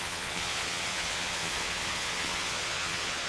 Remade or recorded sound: remade